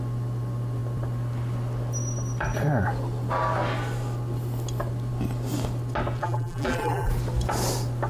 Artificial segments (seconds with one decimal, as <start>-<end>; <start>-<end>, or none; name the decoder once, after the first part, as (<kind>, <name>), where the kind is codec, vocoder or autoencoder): 6.2-7.1 (vocoder, BigVGAN v2)